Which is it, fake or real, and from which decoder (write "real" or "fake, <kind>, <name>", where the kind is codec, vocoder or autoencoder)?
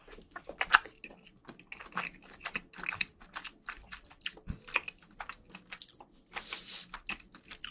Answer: real